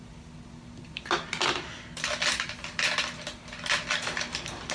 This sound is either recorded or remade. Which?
recorded